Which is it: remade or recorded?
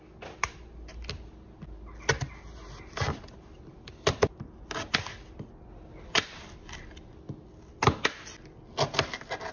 recorded